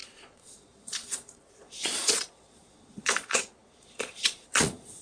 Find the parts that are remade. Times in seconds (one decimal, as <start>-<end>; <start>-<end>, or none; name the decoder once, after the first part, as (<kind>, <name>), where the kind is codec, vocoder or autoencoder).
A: 0.0-5.0 (vocoder, Vocos)